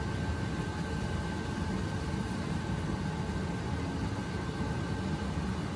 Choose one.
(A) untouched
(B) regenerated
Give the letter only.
A